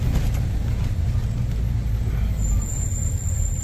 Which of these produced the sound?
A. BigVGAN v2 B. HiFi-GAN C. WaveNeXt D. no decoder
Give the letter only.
D